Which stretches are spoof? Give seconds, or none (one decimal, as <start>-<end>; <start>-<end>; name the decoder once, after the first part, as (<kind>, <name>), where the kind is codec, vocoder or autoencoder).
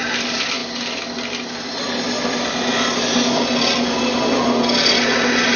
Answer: none